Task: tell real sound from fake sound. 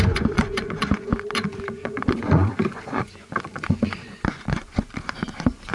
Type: fake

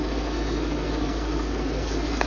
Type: fake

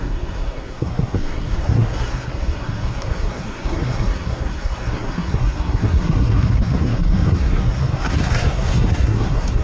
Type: fake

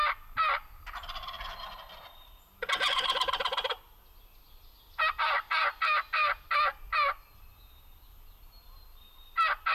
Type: real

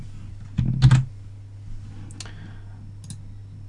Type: real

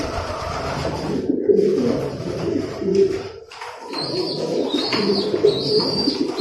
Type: fake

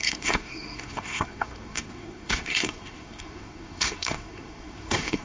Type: fake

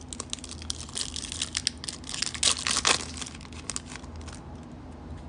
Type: real